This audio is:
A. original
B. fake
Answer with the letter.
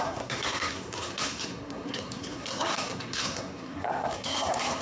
B